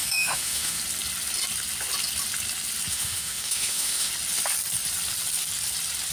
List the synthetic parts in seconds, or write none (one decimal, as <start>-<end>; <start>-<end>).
0.0-0.8; 2.9-4.1